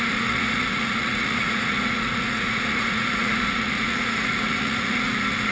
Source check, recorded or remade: remade